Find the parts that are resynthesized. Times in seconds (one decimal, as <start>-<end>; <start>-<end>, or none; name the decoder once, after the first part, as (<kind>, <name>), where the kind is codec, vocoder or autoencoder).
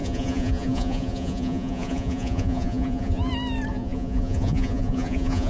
0.0-3.3 (vocoder, Vocos); 3.7-5.5